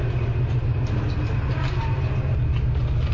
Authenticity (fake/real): real